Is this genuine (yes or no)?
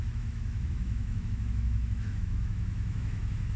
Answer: no